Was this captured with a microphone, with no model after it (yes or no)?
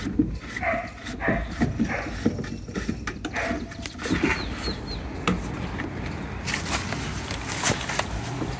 yes